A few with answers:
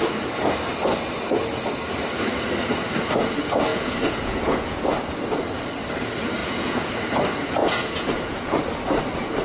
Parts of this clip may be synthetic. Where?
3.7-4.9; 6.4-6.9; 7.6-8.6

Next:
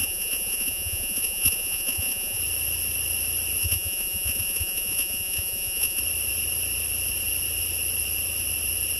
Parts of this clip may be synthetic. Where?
0.0-2.4; 3.6-6.0

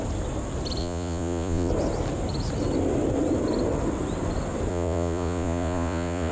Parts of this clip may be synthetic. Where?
0.8-1.7; 4.7-6.3